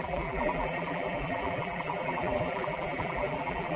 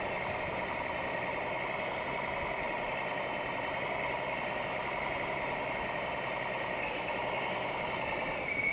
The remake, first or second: first